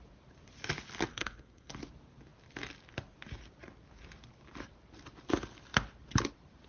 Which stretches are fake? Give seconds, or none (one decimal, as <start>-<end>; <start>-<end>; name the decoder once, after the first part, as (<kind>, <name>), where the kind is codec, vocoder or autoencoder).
1.1-1.7 (codec, SNAC)